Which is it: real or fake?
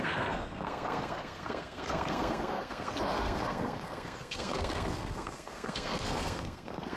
fake